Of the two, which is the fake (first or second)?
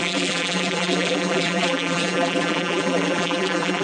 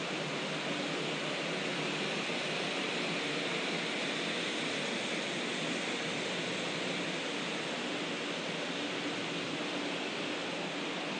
first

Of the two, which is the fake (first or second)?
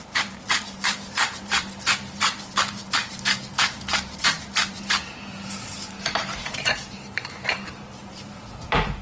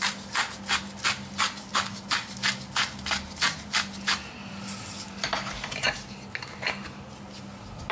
first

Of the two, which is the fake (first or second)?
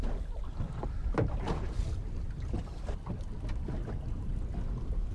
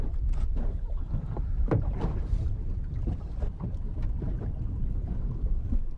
second